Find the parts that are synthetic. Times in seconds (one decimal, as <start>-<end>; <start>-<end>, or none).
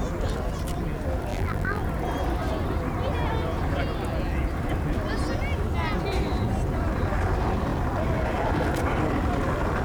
1.3-1.8